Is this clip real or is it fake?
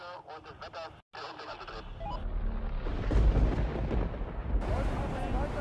real